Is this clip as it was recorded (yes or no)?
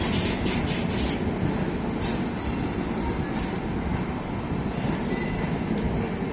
yes